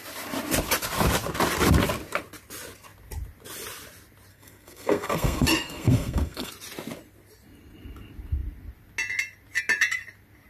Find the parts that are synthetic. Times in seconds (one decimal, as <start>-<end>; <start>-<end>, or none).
4.3-6.5